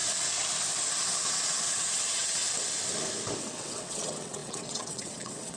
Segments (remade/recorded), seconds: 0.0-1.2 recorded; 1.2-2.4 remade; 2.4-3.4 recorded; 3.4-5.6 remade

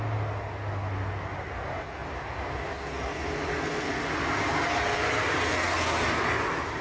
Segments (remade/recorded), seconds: 0.0-6.8 recorded

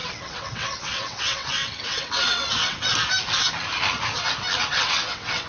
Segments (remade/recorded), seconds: 0.0-2.9 remade; 2.9-4.7 recorded; 4.7-5.5 remade

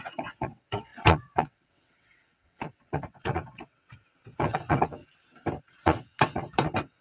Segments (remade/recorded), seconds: 0.0-5.0 remade; 5.0-5.6 recorded; 5.6-7.0 remade

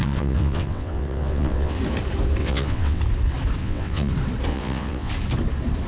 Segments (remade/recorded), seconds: 0.0-1.8 remade; 1.8-2.4 recorded; 2.4-3.0 remade; 3.0-3.6 recorded; 3.6-4.1 remade; 4.1-4.5 recorded; 4.5-5.1 remade; 5.1-5.9 recorded

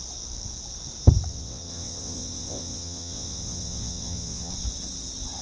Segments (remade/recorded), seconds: 0.0-1.3 recorded; 1.3-4.5 remade; 4.5-5.4 recorded

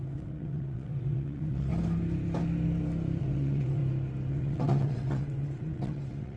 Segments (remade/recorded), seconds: 0.0-1.7 remade; 1.7-3.2 recorded; 3.2-3.8 remade; 3.8-4.3 recorded; 4.3-6.4 remade

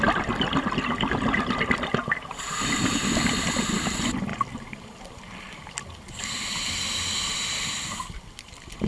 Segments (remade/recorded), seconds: 0.0-8.9 recorded